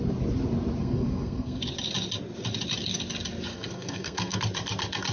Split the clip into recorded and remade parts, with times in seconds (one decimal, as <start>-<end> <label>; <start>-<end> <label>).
0.0-0.8 recorded; 0.8-1.6 remade; 1.6-3.5 recorded; 3.5-4.4 remade; 4.4-5.1 recorded